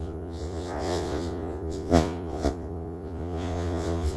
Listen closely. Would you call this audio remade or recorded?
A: remade